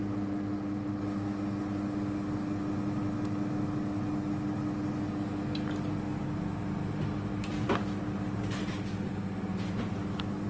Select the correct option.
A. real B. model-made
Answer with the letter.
A